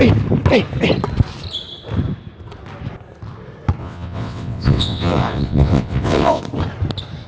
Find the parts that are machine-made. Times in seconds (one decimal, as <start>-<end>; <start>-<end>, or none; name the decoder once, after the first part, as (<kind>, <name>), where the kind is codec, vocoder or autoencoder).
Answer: 3.8-6.4 (vocoder, WaveNeXt)